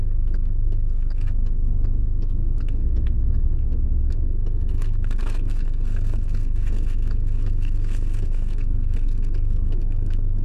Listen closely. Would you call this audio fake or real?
fake